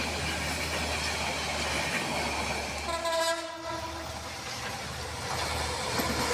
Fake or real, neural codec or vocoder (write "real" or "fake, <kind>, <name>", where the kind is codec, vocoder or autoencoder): real